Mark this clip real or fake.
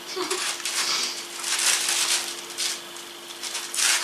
real